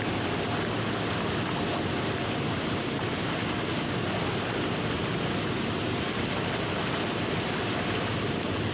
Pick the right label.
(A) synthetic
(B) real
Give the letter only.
B